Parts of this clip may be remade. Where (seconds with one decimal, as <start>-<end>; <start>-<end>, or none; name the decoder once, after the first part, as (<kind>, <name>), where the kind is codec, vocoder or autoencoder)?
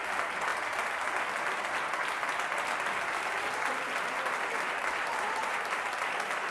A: none